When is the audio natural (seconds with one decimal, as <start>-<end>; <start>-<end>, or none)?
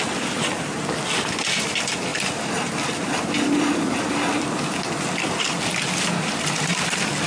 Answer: 0.0-7.3